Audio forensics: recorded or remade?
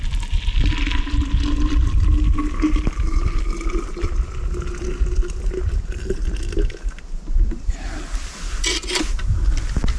recorded